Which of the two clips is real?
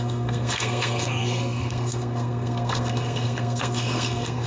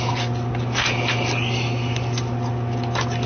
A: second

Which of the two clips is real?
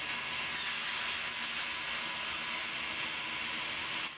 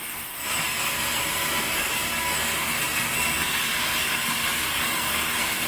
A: first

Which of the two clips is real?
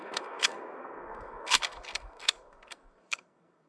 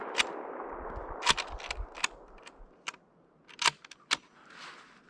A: second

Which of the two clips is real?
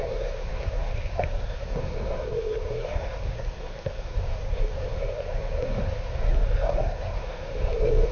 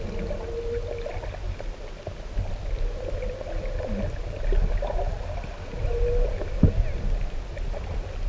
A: second